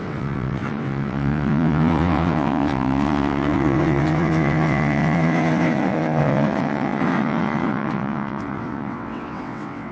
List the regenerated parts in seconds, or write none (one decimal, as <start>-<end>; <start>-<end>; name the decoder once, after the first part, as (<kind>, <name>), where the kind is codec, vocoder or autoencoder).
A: 0.0-9.9 (vocoder, WaveNeXt)